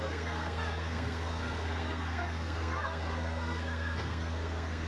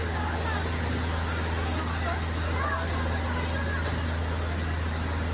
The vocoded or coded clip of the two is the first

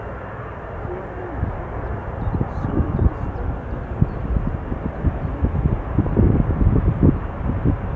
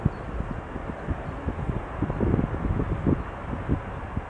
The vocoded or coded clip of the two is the first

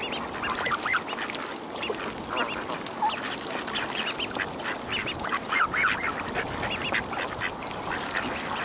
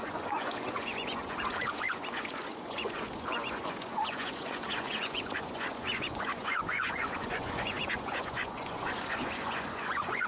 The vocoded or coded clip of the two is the second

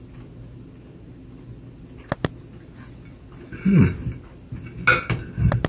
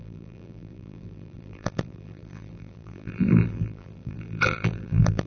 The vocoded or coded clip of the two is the second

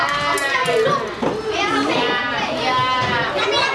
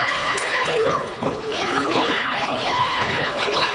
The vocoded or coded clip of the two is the second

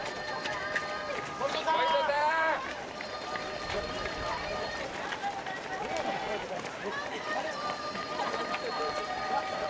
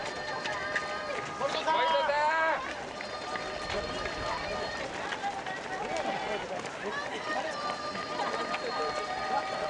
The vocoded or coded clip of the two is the first